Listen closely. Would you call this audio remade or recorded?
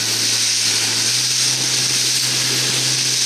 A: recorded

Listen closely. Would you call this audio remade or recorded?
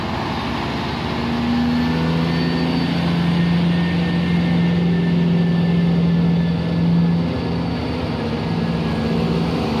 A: recorded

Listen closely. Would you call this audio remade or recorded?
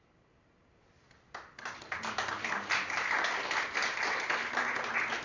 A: recorded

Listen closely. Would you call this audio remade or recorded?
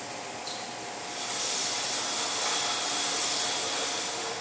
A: recorded